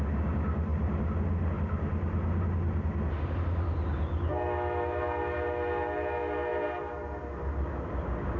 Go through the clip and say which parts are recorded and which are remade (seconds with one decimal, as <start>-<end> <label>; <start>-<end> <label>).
0.0-8.4 recorded